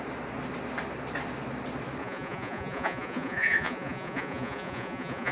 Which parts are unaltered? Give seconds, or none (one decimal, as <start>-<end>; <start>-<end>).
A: 0.0-2.0